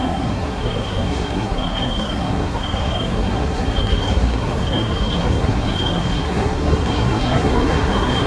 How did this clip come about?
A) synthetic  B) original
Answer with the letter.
A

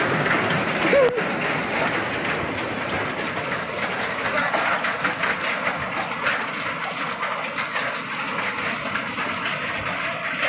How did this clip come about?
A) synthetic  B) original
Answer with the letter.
B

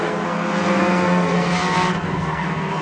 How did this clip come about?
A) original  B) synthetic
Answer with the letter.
B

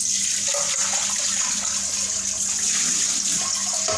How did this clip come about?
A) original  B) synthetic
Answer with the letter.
A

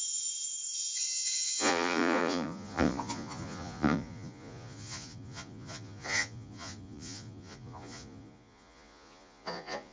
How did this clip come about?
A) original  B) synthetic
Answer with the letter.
B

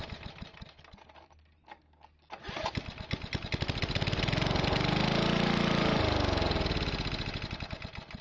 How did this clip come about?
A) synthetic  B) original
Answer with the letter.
B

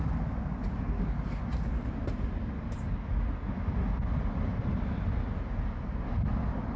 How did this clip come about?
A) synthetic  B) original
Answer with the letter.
B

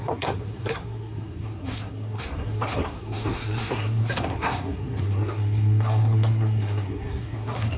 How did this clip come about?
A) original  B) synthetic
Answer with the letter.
B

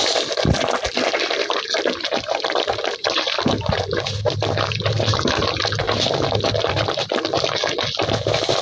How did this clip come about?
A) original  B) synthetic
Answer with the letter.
A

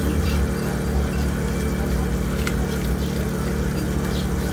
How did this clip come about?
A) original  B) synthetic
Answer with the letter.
A